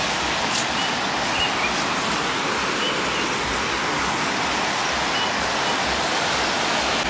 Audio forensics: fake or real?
real